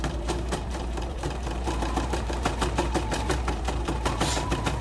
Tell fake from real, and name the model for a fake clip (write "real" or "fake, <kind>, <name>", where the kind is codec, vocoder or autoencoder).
fake, vocoder, BigVGAN v2